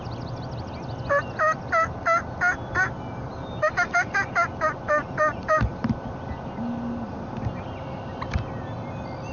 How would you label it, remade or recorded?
recorded